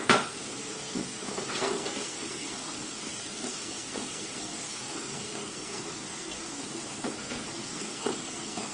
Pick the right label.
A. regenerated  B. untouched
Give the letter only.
A